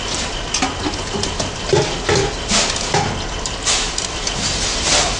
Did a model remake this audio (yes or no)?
no